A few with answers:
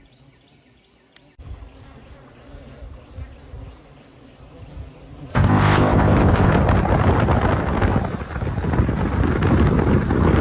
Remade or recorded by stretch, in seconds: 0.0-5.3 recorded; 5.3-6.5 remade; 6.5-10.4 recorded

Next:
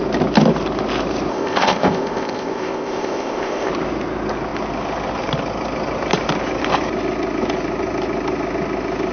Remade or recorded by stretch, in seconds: 0.0-1.3 recorded; 1.3-3.7 remade; 3.7-9.1 recorded

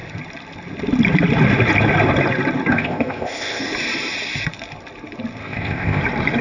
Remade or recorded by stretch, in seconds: 0.0-2.7 recorded; 2.7-3.6 remade; 3.6-5.4 recorded; 5.4-6.0 remade; 6.0-6.4 recorded

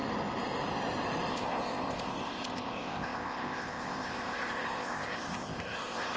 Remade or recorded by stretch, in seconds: 0.0-1.3 recorded; 1.3-6.2 remade

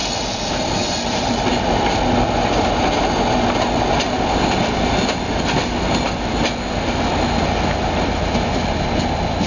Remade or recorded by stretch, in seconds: 0.0-9.5 recorded